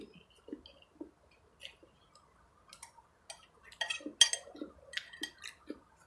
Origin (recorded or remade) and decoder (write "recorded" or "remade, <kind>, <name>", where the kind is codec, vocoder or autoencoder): recorded